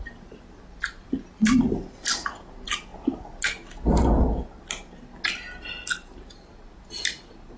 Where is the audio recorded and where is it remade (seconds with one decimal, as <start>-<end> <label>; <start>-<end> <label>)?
0.0-7.6 recorded